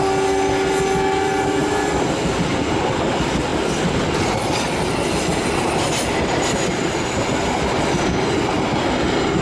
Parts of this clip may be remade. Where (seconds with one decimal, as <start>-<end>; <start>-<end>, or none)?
none